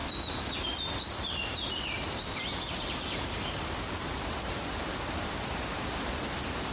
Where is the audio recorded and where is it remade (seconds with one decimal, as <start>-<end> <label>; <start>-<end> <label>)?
0.0-6.7 recorded